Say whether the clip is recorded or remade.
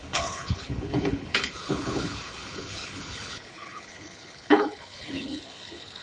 remade